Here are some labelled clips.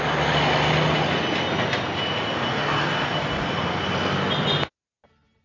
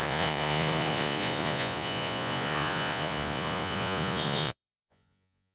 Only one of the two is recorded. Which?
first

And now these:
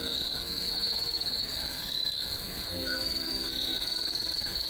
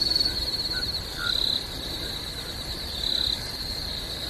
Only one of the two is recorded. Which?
second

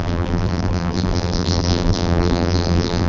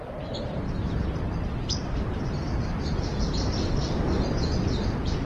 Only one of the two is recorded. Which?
second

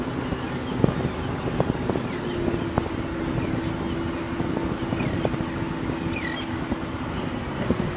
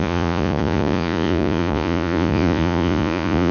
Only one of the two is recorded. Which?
first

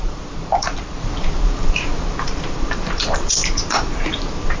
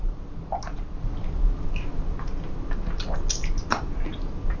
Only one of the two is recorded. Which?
second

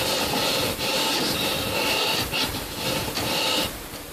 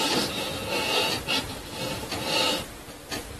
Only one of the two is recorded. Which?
second